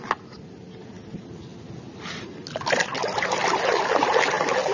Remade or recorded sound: recorded